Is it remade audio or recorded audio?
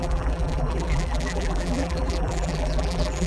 remade